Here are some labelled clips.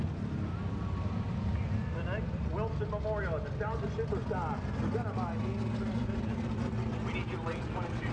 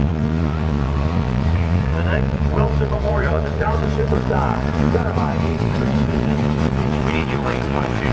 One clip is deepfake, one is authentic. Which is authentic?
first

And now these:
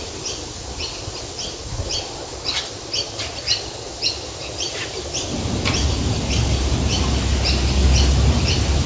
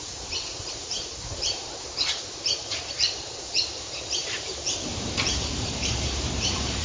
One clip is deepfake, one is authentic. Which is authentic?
first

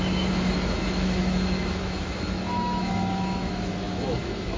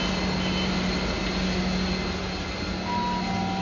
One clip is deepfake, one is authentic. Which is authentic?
second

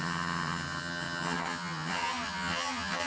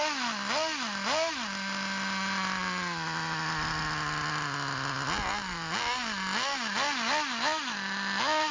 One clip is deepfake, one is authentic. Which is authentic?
second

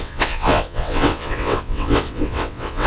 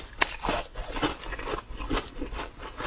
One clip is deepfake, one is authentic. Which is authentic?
second